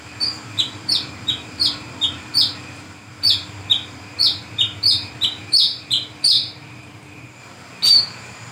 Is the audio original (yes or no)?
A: no